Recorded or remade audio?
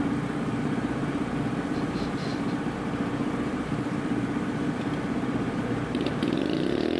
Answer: remade